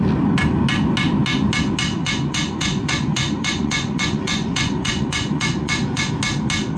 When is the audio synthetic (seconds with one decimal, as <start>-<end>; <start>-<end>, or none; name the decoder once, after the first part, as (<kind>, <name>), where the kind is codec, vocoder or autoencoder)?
2.0-6.1 (vocoder, Vocos)